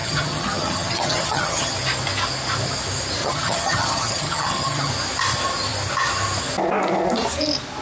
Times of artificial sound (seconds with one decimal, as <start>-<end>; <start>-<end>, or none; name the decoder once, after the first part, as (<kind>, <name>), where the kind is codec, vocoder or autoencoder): 0.0-1.7 (vocoder, HiFi-GAN); 3.2-4.9